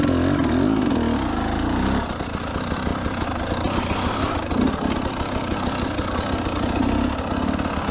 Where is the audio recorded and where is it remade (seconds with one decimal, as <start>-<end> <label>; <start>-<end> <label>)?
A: 0.0-7.9 recorded